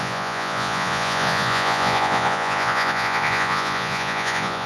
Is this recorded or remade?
remade